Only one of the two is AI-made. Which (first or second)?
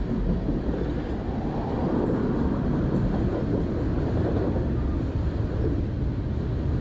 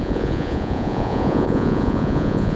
second